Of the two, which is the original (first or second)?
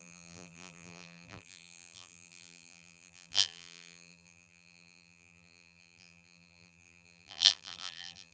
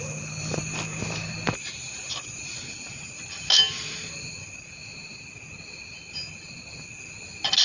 second